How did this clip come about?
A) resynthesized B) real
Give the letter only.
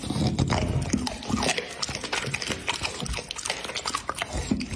B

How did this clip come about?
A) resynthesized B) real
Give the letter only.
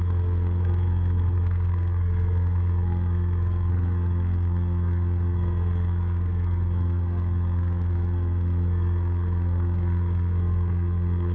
A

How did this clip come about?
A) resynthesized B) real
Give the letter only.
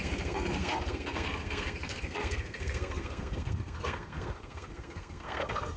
A